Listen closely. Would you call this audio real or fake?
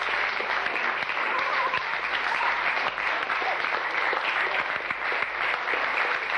fake